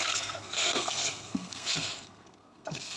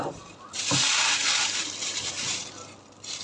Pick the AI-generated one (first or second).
first